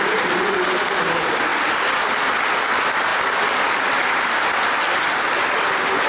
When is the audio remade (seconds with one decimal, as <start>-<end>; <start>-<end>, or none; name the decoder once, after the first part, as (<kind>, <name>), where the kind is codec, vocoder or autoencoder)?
none